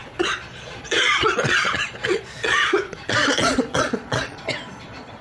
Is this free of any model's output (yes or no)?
no